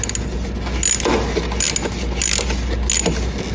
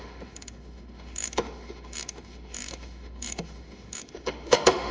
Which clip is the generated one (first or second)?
second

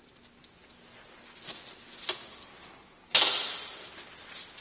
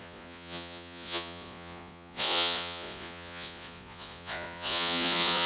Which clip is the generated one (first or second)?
second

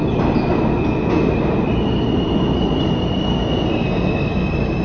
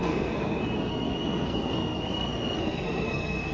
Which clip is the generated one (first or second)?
second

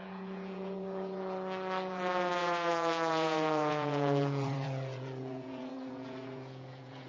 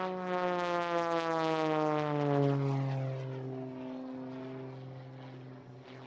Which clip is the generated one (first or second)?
first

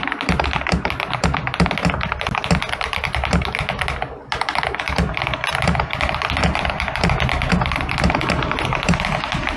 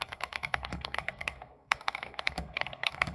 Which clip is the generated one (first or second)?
second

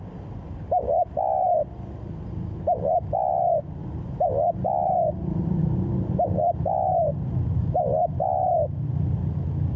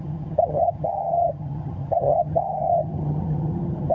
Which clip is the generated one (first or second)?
second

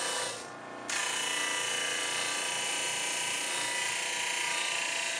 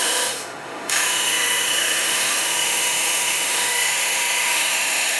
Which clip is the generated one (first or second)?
second